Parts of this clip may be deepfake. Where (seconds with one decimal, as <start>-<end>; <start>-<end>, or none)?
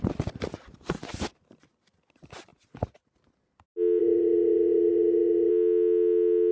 4.0-5.5